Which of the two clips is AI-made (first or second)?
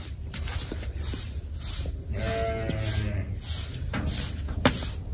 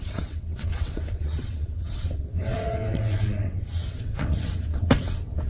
second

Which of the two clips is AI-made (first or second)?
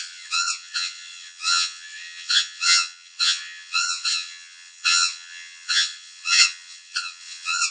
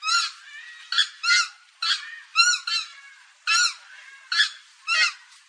first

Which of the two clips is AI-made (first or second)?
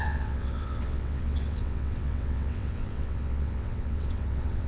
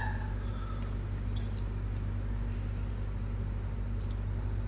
first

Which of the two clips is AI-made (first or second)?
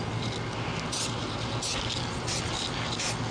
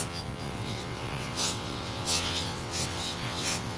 second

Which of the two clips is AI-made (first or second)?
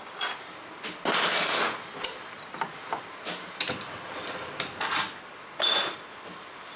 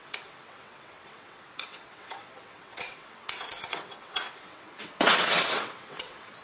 second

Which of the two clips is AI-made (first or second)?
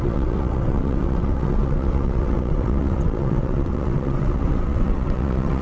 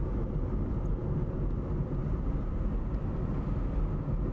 first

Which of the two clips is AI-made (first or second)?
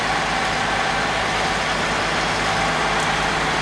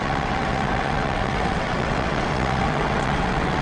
second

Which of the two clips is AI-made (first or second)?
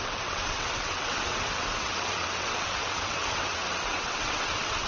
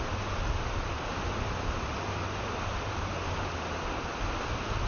first